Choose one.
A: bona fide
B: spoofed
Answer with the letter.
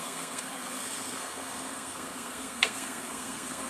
B